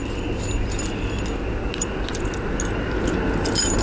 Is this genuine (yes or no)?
yes